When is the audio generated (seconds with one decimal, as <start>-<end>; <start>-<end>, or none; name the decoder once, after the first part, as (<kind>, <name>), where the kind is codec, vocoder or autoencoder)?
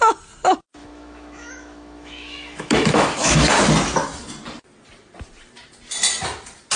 0.8-3.5 (autoencoder, DAC-VAE)